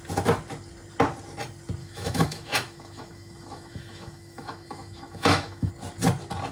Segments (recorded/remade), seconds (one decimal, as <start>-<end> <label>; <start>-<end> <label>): 0.0-1.8 recorded; 1.8-5.7 remade; 5.7-6.5 recorded